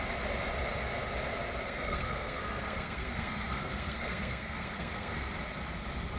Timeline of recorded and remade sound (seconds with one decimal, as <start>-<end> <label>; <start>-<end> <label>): 0.0-1.6 recorded; 1.6-5.3 remade; 5.3-6.2 recorded